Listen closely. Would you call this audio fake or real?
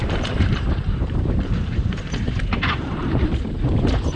fake